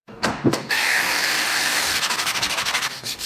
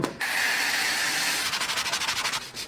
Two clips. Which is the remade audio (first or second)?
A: first